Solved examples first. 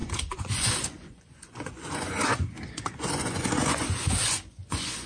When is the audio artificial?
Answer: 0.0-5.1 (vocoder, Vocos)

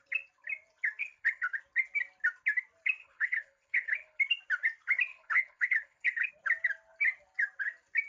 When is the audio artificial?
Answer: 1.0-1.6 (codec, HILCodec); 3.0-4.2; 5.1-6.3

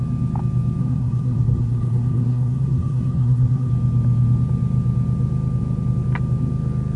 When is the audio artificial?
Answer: 0.8-3.7 (codec, SNAC)

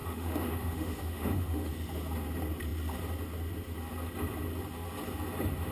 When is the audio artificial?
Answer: 0.0-1.7 (autoencoder, DAC-VAE)